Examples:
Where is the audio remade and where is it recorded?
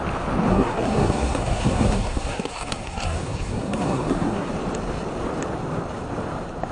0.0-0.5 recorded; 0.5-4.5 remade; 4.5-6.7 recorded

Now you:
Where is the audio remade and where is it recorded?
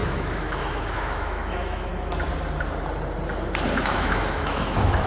0.0-1.9 remade; 1.9-3.8 recorded; 3.8-5.1 remade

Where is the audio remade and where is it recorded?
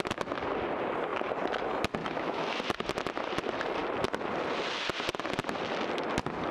0.0-2.0 recorded; 2.0-2.6 remade; 2.6-6.5 recorded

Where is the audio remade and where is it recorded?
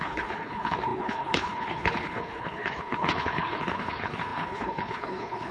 0.0-5.5 remade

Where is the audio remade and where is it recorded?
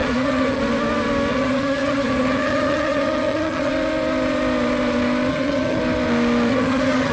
0.0-0.6 remade; 0.6-1.3 recorded; 1.3-3.7 remade; 3.7-5.3 recorded; 5.3-5.8 remade; 5.8-6.5 recorded; 6.5-7.1 remade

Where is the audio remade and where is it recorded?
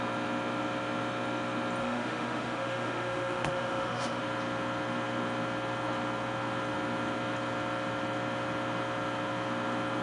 0.0-1.8 recorded; 1.8-4.2 remade; 4.2-10.0 recorded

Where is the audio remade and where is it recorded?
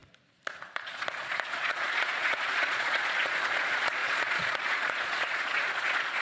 0.0-0.6 recorded; 0.6-6.2 remade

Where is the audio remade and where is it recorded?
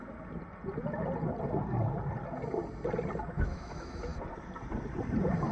0.0-3.3 recorded; 3.3-4.1 remade; 4.1-5.5 recorded